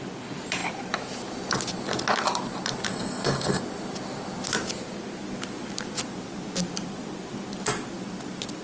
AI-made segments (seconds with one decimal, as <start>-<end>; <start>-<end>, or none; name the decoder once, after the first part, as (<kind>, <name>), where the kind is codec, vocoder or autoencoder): 2.9-3.6 (codec, SNAC)